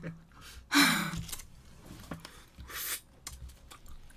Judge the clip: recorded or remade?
recorded